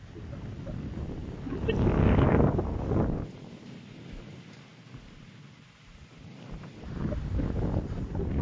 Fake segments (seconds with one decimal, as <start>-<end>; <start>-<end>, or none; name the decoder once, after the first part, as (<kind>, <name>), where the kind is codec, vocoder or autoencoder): none